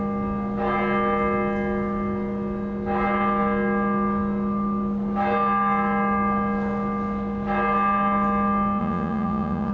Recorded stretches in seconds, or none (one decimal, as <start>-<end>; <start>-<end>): 0.0-8.8